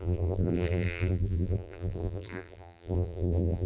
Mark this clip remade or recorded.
remade